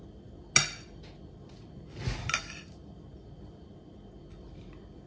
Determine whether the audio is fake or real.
real